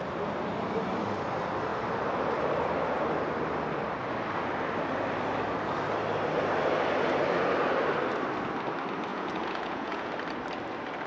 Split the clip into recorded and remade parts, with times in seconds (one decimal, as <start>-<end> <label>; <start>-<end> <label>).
0.0-9.1 recorded; 9.1-10.1 remade; 10.1-11.1 recorded